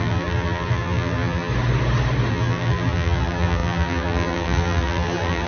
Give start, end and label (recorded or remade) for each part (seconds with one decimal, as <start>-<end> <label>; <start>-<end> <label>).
0.0-1.5 remade; 1.5-2.3 recorded; 2.3-5.5 remade